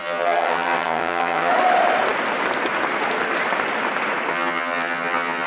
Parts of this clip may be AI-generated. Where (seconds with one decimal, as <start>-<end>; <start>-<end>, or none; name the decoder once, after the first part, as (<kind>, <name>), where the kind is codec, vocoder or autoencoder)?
0.0-1.5 (vocoder, HiFi-GAN); 4.3-5.5